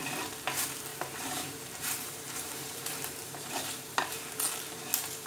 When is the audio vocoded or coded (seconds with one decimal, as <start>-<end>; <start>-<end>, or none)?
0.9-4.1